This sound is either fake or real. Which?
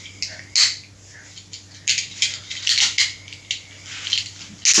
real